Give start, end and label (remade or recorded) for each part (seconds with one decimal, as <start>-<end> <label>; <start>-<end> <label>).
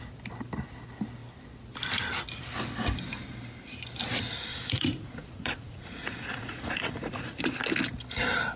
0.0-4.5 recorded; 4.5-7.4 remade; 7.4-8.6 recorded